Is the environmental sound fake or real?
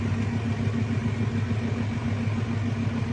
real